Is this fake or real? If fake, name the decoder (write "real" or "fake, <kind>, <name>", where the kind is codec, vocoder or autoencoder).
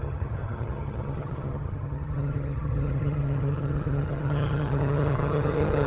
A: fake, vocoder, HiFi-GAN